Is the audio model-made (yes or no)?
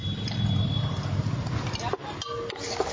no